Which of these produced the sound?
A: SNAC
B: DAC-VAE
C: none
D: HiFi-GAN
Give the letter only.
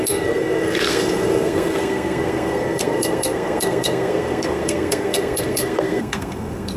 A